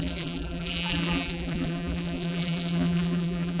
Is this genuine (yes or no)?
no